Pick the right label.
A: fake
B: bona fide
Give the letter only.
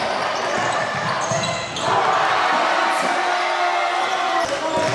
B